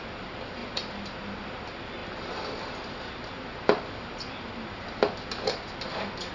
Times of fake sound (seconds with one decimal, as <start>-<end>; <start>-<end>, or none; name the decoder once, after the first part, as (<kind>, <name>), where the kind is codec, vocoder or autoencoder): none